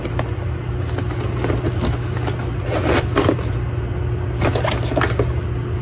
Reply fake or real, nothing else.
real